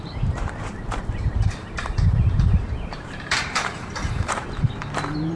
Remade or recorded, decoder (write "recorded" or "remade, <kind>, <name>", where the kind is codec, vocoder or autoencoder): remade, vocoder, BigVGAN v2